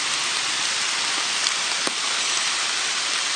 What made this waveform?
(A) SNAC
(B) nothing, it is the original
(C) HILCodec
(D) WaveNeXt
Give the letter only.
B